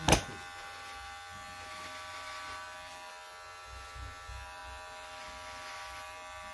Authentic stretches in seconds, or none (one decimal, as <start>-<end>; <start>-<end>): 0.0-6.5